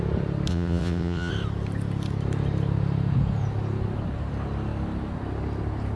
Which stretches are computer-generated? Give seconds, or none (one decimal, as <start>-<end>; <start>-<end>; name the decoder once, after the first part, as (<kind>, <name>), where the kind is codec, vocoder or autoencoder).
0.5-1.3 (vocoder, WaveNeXt)

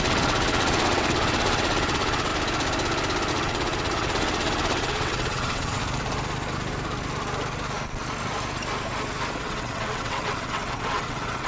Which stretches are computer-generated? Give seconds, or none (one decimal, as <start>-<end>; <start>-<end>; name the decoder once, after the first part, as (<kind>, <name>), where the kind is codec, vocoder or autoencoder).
0.0-2.3 (vocoder, WaveNeXt); 3.3-5.8; 9.4-11.5

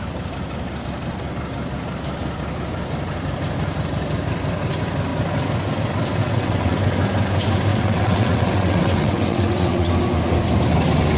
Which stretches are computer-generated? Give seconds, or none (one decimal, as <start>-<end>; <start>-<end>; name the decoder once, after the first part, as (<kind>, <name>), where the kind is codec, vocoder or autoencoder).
6.2-6.8 (vocoder, WaveNeXt); 7.7-9.9

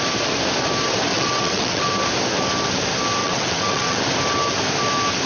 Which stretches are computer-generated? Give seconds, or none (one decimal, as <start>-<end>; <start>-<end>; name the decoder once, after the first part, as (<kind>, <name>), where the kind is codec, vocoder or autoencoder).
1.1-1.9 (vocoder, WaveNeXt); 3.2-4.0